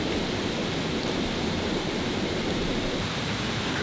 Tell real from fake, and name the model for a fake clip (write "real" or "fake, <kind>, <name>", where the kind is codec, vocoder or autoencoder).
real